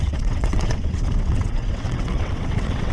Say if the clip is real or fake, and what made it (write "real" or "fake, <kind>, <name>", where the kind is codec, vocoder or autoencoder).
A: fake, vocoder, WaveNeXt